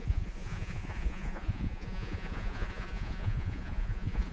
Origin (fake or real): fake